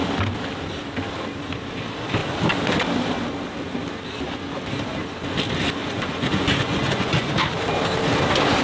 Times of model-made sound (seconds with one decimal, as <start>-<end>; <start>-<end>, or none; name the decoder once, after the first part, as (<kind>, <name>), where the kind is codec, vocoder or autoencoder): 5.8-7.3 (vocoder, Vocos)